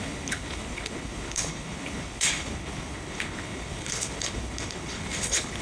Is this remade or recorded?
remade